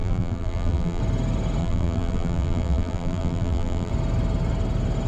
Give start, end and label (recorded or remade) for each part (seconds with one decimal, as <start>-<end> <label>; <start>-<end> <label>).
0.0-1.0 remade; 1.0-1.6 recorded; 1.6-3.9 remade; 3.9-5.1 recorded